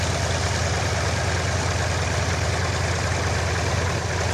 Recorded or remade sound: recorded